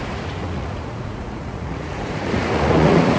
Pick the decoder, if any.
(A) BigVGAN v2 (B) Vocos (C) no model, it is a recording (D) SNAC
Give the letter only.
B